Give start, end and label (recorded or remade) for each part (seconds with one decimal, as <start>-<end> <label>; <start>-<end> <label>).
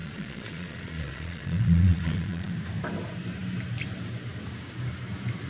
0.0-2.5 remade; 2.5-5.5 recorded